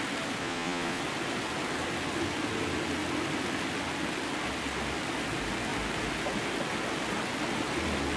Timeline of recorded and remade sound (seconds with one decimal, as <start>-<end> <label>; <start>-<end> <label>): 0.0-0.4 recorded; 0.4-1.0 remade; 1.0-8.2 recorded